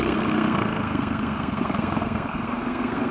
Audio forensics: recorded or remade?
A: remade